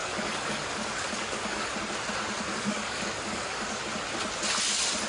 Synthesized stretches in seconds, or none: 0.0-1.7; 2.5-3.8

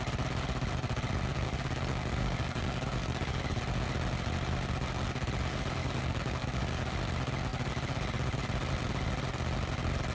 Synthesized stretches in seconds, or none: 1.3-3.6; 5.8-6.8

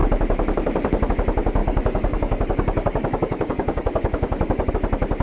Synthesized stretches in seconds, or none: 1.6-4.7

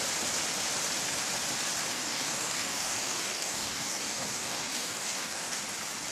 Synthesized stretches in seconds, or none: 1.9-5.6

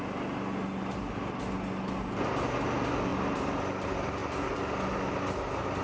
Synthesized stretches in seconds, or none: none